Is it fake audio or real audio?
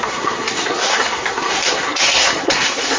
fake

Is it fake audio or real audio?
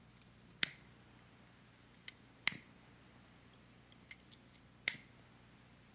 real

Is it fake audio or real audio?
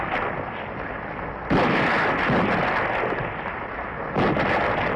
real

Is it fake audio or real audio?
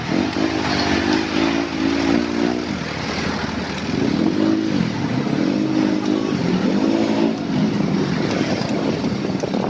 real